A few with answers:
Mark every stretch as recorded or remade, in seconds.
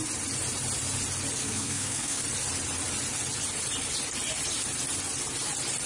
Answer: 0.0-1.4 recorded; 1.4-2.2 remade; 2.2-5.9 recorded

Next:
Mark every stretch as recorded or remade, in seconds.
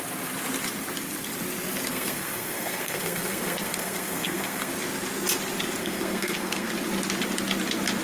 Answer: 0.0-1.9 recorded; 1.9-4.7 remade; 4.7-5.8 recorded; 5.8-6.7 remade; 6.7-8.0 recorded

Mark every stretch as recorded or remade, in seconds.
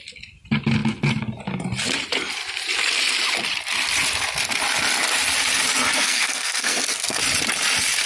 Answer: 0.0-5.9 recorded; 5.9-7.2 remade; 7.2-8.1 recorded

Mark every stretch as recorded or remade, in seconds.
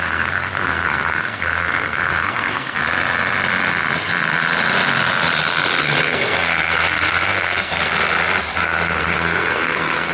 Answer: 0.0-2.8 remade; 2.8-5.8 recorded; 5.8-7.9 remade; 7.9-8.6 recorded; 8.6-10.1 remade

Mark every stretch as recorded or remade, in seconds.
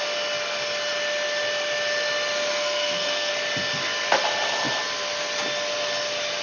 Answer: 0.0-2.5 recorded; 2.5-3.3 remade; 3.3-6.4 recorded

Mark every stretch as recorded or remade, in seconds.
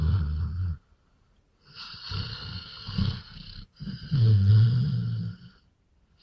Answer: 0.0-2.3 recorded; 2.3-4.5 remade; 4.5-6.2 recorded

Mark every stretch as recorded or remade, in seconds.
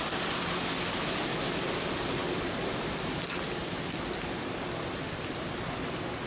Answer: 0.0-6.3 recorded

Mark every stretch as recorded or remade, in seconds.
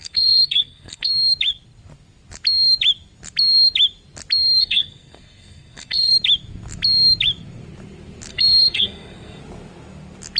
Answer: 0.0-1.1 remade; 1.1-4.6 recorded; 4.6-6.1 remade; 6.1-8.3 recorded; 8.3-9.4 remade; 9.4-10.4 recorded